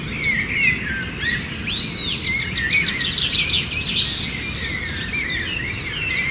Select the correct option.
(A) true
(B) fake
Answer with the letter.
A